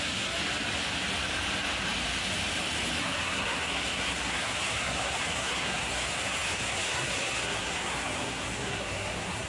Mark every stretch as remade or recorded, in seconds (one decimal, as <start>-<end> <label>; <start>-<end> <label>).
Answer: 0.0-0.4 remade; 0.4-3.0 recorded; 3.0-9.5 remade